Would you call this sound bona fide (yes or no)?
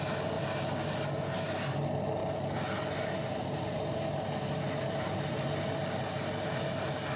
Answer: yes